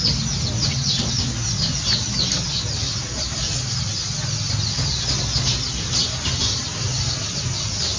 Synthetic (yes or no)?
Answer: no